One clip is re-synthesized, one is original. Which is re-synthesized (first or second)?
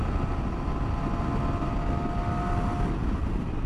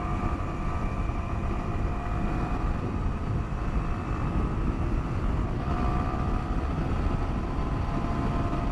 second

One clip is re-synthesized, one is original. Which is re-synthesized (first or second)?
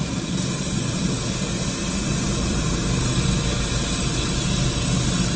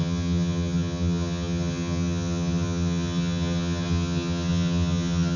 second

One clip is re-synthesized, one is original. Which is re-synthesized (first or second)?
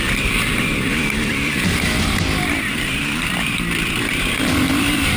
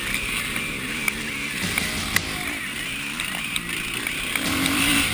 first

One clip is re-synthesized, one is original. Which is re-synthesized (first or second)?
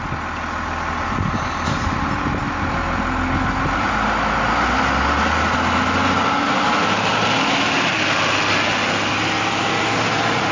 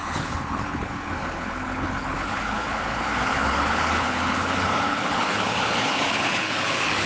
second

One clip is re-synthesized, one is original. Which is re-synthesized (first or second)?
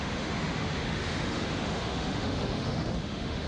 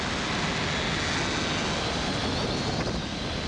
first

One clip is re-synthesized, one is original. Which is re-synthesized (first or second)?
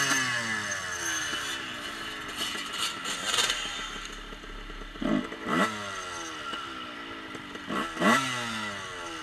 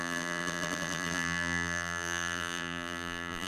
second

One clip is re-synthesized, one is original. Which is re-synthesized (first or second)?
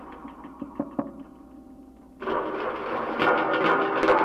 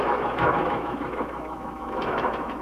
second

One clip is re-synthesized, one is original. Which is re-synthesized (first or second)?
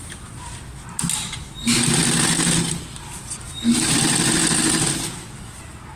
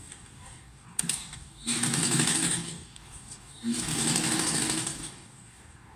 second